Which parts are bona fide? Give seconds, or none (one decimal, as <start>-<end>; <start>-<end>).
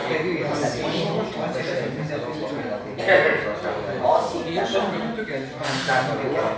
0.0-6.6